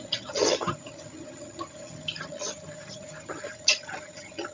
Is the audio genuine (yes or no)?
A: no